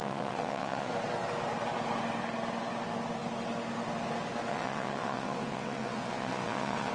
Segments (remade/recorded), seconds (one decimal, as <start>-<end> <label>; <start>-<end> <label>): 0.0-0.9 remade; 0.9-4.5 recorded; 4.5-6.9 remade